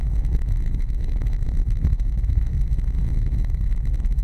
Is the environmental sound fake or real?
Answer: fake